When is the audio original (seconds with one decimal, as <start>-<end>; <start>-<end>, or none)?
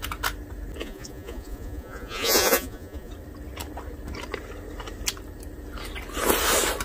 0.0-0.8; 3.1-6.8